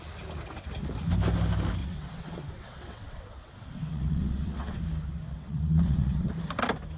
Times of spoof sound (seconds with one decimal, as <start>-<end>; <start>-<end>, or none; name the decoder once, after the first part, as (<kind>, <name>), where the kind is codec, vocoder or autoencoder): 1.8-4.8 (vocoder, WaveNeXt); 5.3-6.3